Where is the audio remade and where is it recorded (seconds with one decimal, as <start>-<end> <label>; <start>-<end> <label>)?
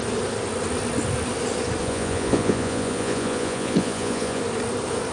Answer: 0.0-1.8 recorded; 1.8-4.4 remade; 4.4-5.1 recorded